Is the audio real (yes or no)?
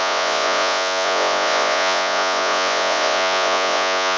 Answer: no